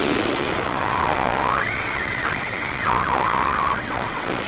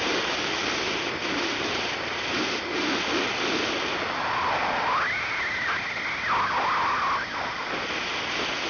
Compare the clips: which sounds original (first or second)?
second